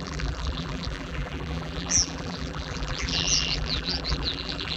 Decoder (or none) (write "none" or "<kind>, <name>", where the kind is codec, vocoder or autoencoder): vocoder, BigVGAN v2